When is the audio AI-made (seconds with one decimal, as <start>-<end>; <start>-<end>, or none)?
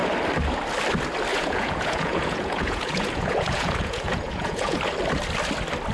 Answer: 1.3-4.8